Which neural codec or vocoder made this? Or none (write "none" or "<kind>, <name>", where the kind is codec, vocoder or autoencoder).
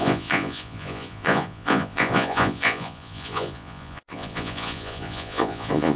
vocoder, Vocos